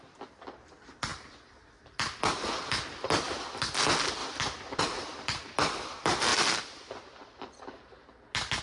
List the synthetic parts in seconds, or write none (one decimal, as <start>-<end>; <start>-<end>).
none